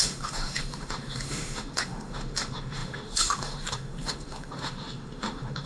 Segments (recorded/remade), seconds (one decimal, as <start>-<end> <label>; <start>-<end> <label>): 0.0-5.7 remade